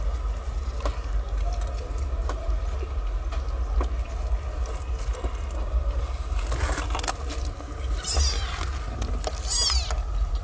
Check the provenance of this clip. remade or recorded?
recorded